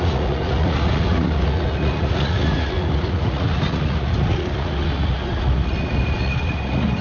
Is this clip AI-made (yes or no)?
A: yes